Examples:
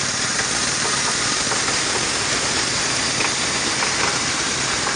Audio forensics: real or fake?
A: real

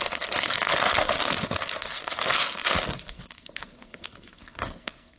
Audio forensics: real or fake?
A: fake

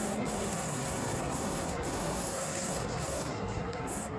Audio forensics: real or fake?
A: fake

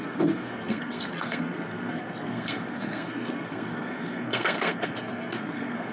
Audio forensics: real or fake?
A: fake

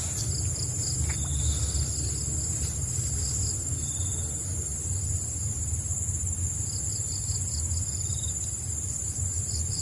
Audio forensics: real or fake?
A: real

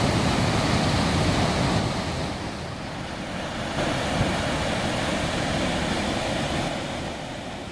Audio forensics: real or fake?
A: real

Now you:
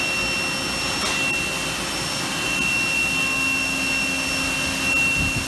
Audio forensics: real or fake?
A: real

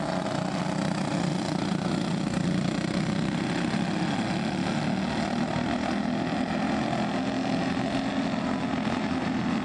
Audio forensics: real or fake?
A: real